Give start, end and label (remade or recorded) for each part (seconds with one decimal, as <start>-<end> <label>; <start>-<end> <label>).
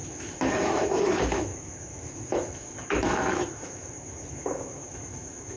0.0-5.6 remade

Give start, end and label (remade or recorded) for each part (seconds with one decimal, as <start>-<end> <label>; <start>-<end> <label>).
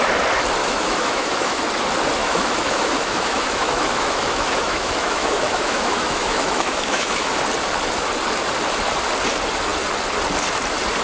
0.0-0.6 recorded; 0.6-1.6 remade; 1.6-2.2 recorded; 2.2-7.3 remade; 7.3-11.0 recorded